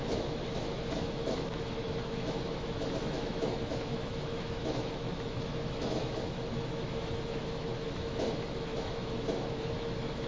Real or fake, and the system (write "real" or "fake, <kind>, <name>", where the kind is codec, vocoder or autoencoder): fake, autoencoder, DAC-VAE